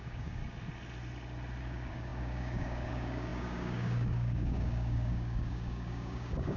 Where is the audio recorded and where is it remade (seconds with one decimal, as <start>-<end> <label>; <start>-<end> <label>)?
0.0-0.4 remade; 0.4-1.6 recorded; 1.6-6.6 remade

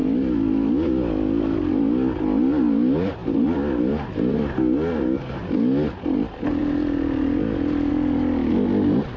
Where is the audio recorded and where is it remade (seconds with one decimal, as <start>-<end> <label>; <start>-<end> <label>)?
0.0-9.2 recorded